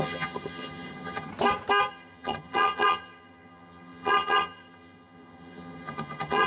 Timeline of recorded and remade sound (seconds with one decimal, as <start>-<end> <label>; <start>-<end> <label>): 0.0-1.3 remade; 1.3-1.9 recorded; 1.9-6.5 remade